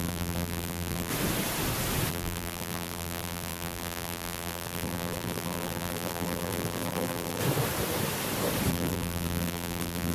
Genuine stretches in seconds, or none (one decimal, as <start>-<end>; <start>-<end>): 1.1-2.1; 7.4-8.7